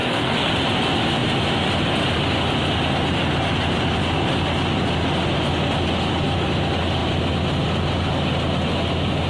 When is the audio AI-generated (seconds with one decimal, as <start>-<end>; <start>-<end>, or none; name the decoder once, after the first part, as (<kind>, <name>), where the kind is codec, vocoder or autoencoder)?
0.0-0.5 (codec, SNAC)